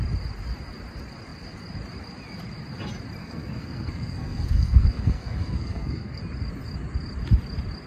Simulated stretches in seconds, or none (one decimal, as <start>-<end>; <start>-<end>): 3.2-6.2